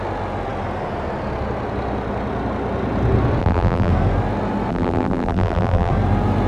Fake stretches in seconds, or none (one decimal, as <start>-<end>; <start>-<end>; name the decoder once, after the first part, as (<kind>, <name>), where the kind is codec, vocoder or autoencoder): 3.4-3.9 (vocoder, BigVGAN v2); 4.7-5.9